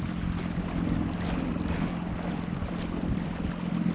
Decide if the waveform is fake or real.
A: real